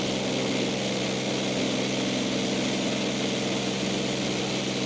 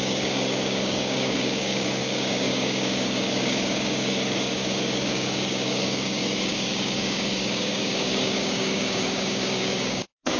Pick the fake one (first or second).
second